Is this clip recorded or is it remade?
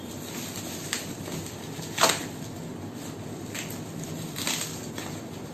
recorded